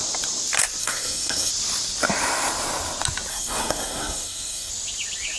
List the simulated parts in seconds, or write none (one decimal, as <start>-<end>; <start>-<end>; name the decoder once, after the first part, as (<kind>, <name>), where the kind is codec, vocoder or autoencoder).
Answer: 0.8-1.5 (codec, SNAC); 3.3-4.7